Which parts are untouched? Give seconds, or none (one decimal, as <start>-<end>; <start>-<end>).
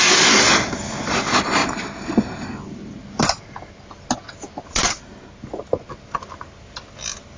0.0-7.4